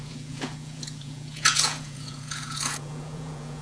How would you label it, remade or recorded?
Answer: remade